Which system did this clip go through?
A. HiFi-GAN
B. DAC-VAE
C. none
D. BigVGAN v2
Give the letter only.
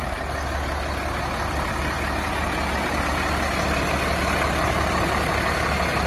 C